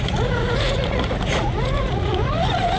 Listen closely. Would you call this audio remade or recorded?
remade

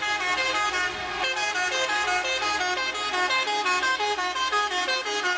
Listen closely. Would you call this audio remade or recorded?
recorded